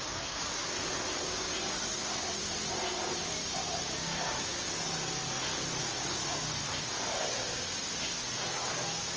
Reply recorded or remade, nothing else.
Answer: recorded